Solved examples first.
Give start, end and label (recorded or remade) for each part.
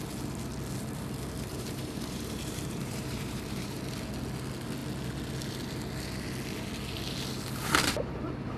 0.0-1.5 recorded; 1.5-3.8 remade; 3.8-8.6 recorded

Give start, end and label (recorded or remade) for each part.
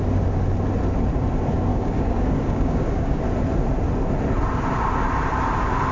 0.0-1.7 recorded; 1.7-3.2 remade; 3.2-5.9 recorded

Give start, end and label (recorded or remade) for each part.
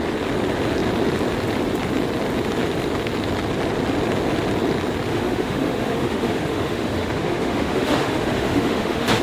0.0-5.1 recorded; 5.1-9.2 remade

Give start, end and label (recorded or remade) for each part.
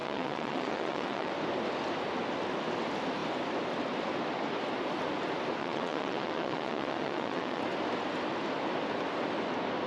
0.0-1.3 remade; 1.3-5.6 recorded; 5.6-7.6 remade; 7.6-9.9 recorded